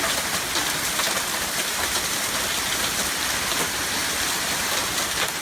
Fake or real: real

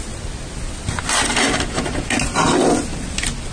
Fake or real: real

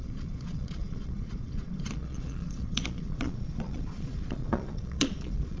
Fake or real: fake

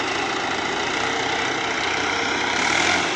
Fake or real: real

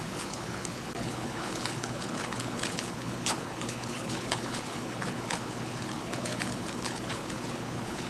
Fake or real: fake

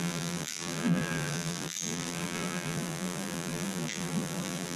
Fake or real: fake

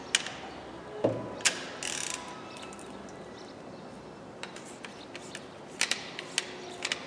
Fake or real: real